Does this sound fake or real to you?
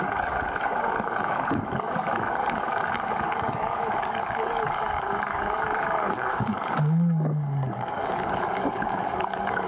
fake